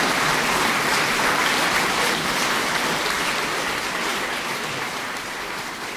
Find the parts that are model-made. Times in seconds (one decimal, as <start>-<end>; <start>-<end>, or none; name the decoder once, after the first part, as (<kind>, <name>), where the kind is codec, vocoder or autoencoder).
0.0-6.0 (vocoder, BigVGAN v2)